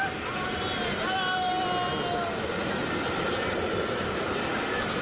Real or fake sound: real